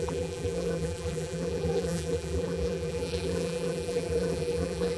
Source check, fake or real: fake